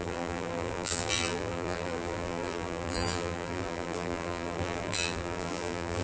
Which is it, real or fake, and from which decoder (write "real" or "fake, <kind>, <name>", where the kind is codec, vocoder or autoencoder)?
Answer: fake, vocoder, BigVGAN v2